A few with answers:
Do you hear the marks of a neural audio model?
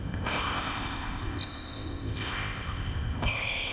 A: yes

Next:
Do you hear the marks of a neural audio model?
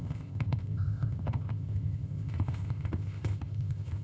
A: yes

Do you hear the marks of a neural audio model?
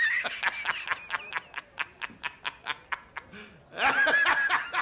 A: no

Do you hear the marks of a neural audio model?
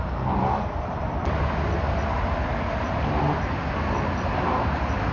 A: no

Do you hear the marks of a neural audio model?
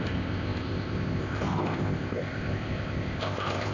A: yes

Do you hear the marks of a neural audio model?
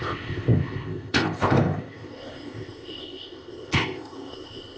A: yes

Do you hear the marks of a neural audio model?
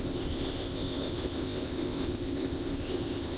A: yes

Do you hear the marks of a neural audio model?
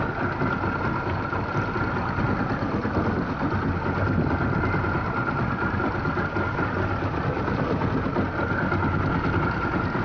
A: no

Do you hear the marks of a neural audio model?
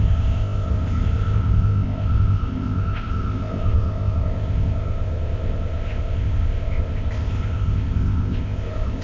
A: yes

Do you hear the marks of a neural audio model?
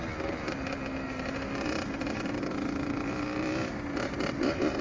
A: no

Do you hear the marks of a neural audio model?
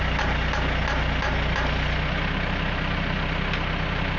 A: no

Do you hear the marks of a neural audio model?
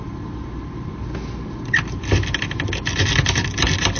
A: no